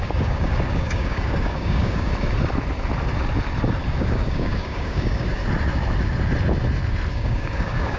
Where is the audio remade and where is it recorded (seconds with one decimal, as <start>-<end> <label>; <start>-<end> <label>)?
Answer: 0.0-2.1 remade; 2.1-4.0 recorded; 4.0-5.4 remade; 5.4-7.1 recorded; 7.1-8.0 remade